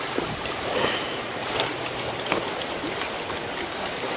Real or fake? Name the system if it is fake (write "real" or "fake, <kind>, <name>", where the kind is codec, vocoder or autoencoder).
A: fake, vocoder, BigVGAN v2